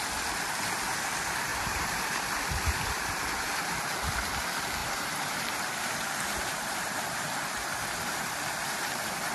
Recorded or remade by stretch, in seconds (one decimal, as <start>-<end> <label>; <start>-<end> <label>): 0.0-1.5 recorded; 1.5-3.7 remade; 3.7-4.8 recorded; 4.8-9.3 remade